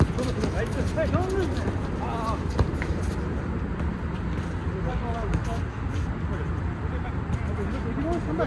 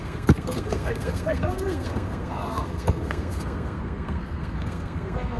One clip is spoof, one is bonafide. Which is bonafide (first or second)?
first